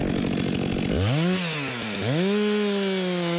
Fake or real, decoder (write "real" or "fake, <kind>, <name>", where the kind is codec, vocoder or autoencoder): real